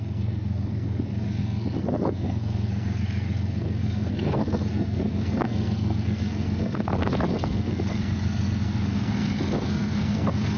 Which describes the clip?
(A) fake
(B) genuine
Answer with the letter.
A